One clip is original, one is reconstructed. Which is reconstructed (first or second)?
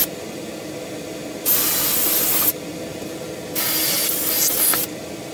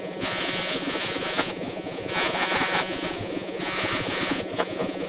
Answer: second